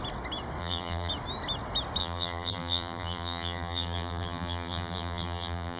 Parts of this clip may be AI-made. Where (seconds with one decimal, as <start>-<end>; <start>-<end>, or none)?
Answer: 0.6-1.1; 2.0-5.8